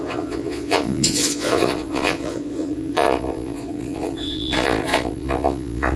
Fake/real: fake